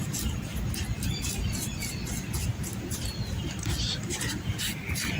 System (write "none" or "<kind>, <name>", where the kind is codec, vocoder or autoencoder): none